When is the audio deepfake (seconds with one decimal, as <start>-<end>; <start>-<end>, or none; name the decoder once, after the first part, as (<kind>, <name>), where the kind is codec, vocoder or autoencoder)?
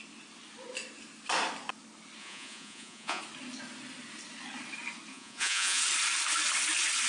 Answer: 2.2-3.2 (vocoder, Vocos); 5.1-5.8